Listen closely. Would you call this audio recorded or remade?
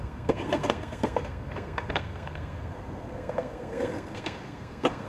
remade